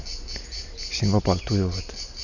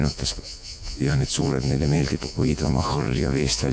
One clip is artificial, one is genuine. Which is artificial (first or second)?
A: second